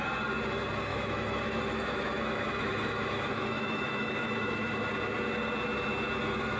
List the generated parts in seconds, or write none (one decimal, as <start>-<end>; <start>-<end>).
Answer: 0.9-4.9